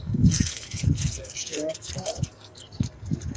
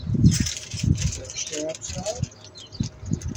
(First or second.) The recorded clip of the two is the second